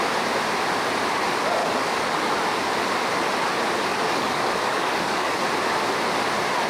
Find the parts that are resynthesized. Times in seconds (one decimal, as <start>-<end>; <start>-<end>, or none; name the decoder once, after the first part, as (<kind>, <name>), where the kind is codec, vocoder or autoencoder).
1.6-2.3 (codec, DAC); 3.9-5.4